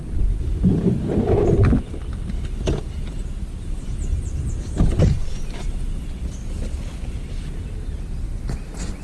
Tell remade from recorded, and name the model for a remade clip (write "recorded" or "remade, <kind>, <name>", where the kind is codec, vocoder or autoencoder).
recorded